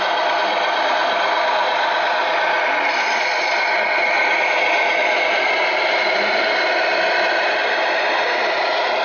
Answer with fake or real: real